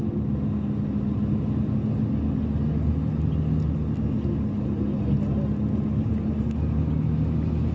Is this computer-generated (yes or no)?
no